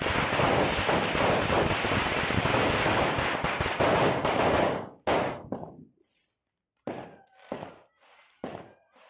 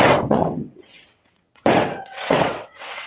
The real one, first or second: first